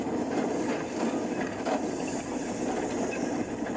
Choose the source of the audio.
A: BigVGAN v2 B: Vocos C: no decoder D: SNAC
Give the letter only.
C